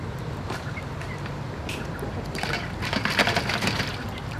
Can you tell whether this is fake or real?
real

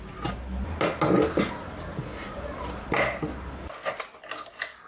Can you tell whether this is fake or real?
real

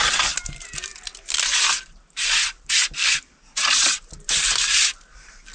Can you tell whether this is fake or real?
real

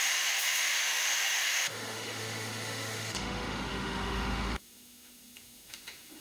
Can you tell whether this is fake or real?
fake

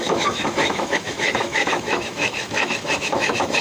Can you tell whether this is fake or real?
fake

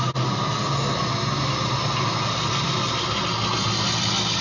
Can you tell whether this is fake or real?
real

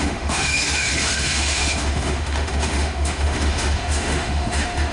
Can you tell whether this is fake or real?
fake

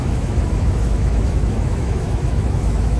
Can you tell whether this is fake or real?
fake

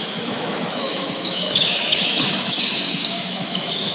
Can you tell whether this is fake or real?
fake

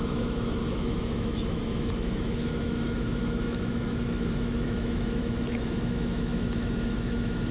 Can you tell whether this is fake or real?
fake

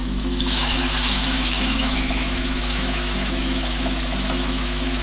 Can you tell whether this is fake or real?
fake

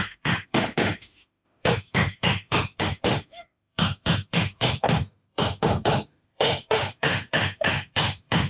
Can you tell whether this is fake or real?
fake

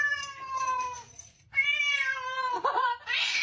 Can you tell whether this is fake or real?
real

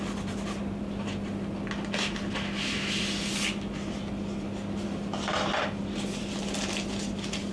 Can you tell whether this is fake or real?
real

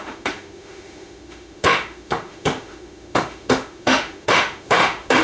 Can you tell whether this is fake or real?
fake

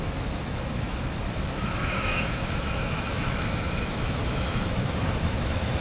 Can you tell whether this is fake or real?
fake